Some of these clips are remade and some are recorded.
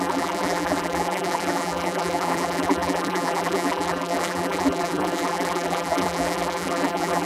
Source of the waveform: remade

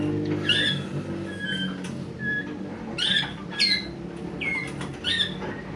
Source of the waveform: recorded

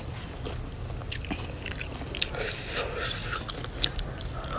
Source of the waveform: recorded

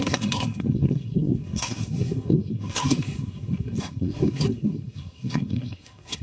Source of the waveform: remade